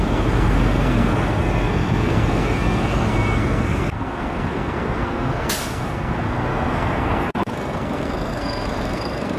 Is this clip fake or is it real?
fake